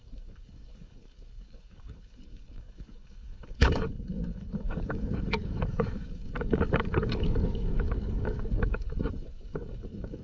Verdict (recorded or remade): remade